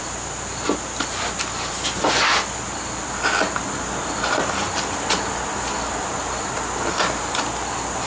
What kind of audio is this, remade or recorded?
recorded